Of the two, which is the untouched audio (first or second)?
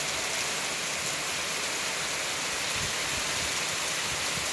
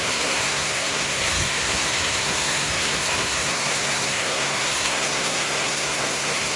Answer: first